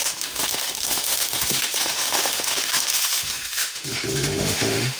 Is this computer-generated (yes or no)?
yes